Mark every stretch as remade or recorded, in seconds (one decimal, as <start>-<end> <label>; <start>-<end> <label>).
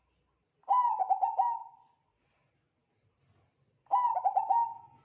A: 0.0-5.0 recorded